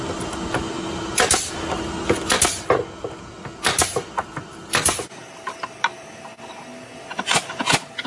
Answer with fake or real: real